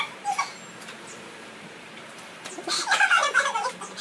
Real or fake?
fake